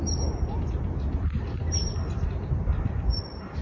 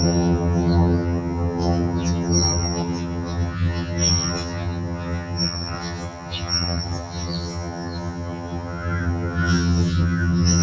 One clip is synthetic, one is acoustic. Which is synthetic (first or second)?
second